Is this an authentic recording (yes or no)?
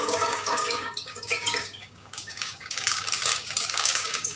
no